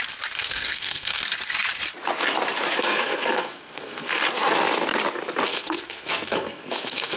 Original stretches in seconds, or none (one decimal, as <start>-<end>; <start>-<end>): 0.0-0.4; 1.2-2.8; 4.2-5.5

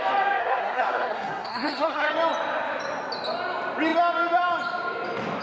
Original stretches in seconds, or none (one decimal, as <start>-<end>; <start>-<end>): 0.0-0.4; 2.1-5.4